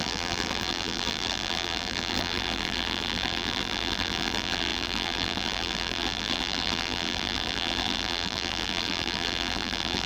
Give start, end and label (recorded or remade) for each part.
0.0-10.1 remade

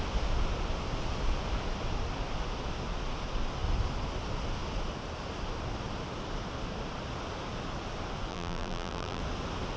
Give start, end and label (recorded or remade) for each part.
0.0-8.3 recorded; 8.3-9.2 remade; 9.2-9.8 recorded

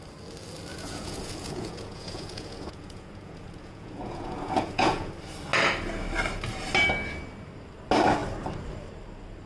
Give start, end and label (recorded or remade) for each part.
0.0-0.7 recorded; 0.7-5.1 remade; 5.1-9.5 recorded

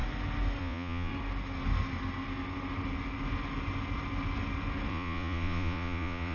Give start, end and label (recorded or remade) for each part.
0.0-0.6 recorded; 0.6-1.1 remade; 1.1-4.9 recorded; 4.9-6.3 remade

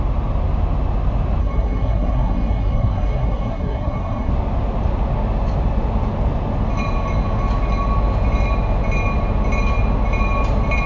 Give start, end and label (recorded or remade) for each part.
0.0-1.4 recorded; 1.4-4.3 remade; 4.3-10.9 recorded

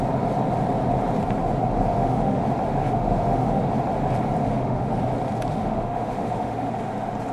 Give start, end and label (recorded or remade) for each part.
0.0-1.9 recorded; 1.9-2.4 remade; 2.4-2.8 recorded; 2.8-3.6 remade; 3.6-4.4 recorded; 4.4-5.0 remade; 5.0-5.5 recorded; 5.5-6.7 remade; 6.7-7.3 recorded